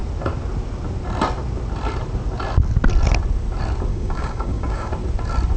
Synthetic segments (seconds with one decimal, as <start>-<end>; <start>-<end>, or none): 3.9-4.9